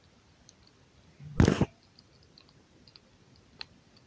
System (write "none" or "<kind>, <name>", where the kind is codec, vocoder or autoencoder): none